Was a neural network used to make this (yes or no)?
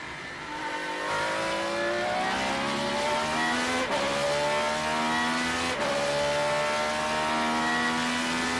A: no